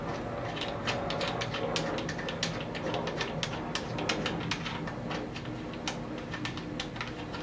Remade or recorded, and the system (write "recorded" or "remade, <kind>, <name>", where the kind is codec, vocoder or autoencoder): recorded